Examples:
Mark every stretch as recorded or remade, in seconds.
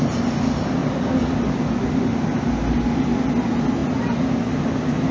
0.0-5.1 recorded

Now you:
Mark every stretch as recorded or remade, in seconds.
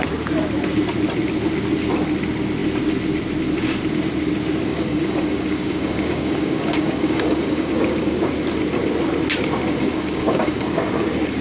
0.0-4.7 recorded; 4.7-8.3 remade; 8.3-9.9 recorded; 9.9-10.8 remade; 10.8-11.4 recorded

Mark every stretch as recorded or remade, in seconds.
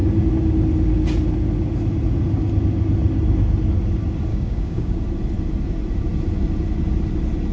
0.0-4.3 recorded; 4.3-5.0 remade; 5.0-7.5 recorded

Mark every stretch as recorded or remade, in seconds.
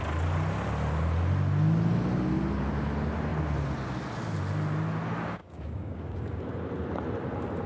0.0-5.4 recorded; 5.4-6.4 remade; 6.4-7.7 recorded